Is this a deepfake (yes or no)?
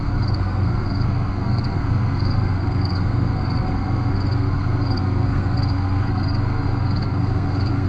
yes